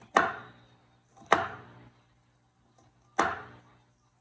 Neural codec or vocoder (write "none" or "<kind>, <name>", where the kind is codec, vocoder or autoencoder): none